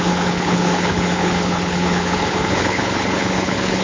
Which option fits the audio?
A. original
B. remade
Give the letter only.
B